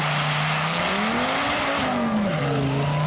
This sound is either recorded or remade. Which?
recorded